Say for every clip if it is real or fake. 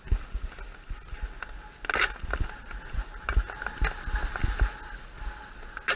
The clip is real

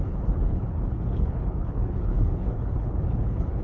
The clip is fake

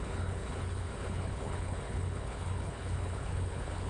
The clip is fake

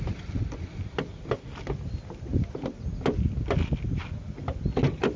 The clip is real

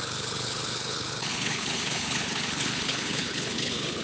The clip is fake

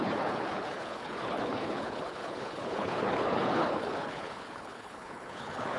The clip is fake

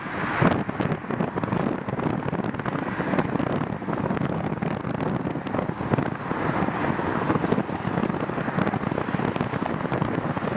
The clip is real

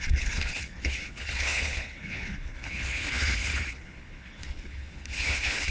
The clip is fake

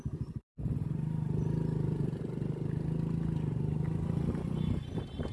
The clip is real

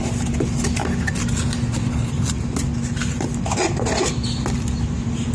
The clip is real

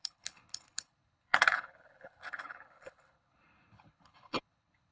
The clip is fake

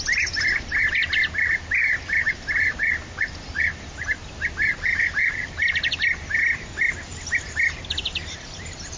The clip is real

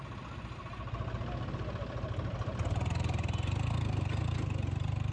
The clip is real